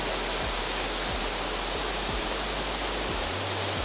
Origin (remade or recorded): recorded